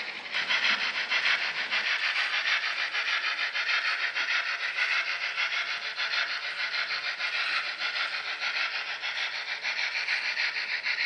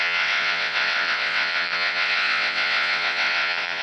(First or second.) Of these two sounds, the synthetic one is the second